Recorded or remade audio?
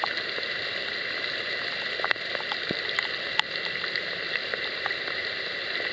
recorded